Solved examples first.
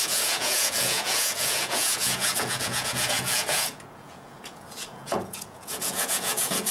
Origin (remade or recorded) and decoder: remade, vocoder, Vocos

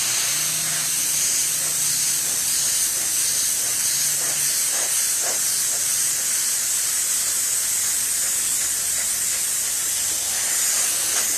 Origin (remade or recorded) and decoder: recorded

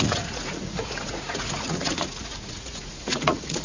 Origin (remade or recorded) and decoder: remade, vocoder, Vocos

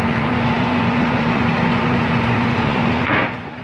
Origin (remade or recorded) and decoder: remade, vocoder, Vocos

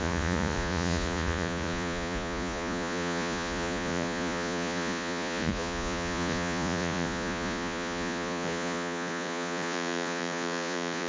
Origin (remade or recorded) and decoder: remade, vocoder, Vocos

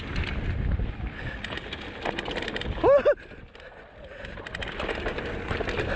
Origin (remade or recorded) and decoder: recorded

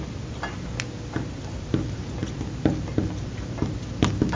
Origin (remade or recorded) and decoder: recorded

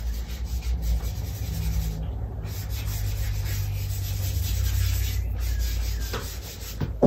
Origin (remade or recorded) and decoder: recorded